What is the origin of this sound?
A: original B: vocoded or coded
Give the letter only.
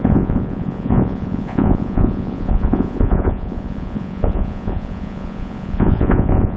B